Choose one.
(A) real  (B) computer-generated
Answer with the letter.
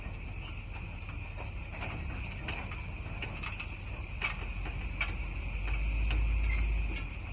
A